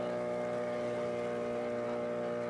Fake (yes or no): no